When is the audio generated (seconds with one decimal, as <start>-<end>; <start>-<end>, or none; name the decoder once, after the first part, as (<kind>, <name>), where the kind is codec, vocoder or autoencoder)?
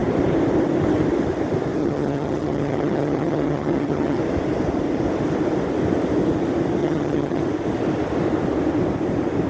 1.8-4.2 (vocoder, HiFi-GAN); 6.8-7.4